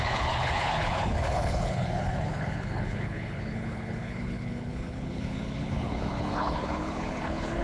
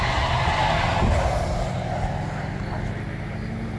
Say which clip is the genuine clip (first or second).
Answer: second